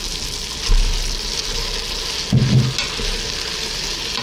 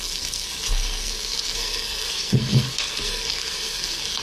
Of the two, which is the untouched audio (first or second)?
first